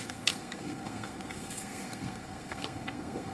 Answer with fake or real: fake